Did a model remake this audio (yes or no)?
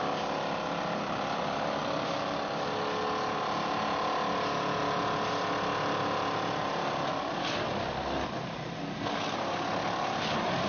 no